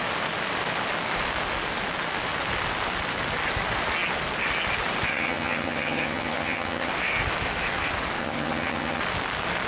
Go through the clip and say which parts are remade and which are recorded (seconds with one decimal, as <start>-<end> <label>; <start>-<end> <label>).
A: 0.0-5.1 recorded; 5.1-6.9 remade; 6.9-8.2 recorded; 8.2-9.0 remade; 9.0-9.7 recorded

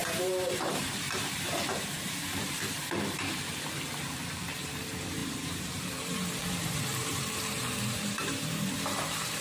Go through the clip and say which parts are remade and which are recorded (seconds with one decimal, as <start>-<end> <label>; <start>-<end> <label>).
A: 0.0-9.4 remade

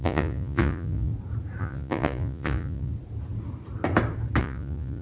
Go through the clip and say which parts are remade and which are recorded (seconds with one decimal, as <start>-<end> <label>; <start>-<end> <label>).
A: 0.0-1.1 remade; 1.1-1.6 recorded; 1.6-2.9 remade; 2.9-4.4 recorded; 4.4-5.0 remade

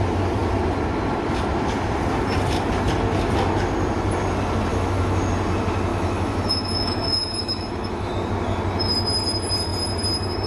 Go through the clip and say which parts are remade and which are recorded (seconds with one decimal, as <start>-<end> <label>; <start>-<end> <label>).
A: 0.0-4.7 recorded; 4.7-5.2 remade; 5.2-5.9 recorded; 5.9-8.1 remade; 8.1-10.5 recorded